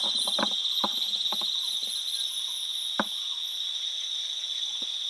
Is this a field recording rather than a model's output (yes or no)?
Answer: yes